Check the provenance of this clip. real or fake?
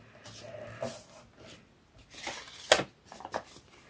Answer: real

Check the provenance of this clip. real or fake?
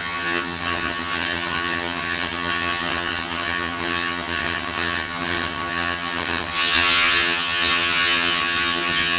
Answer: fake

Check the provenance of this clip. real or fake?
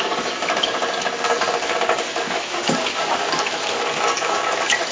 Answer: fake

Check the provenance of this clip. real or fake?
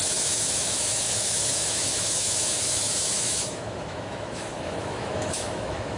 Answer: fake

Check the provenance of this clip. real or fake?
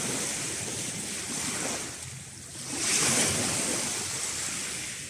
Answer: real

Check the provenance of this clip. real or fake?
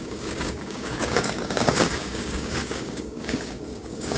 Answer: fake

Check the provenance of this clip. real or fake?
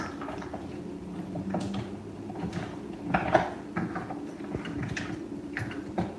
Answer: real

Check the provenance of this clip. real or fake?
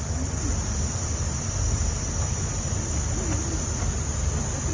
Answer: real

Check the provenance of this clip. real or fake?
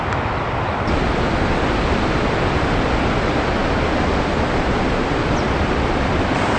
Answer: real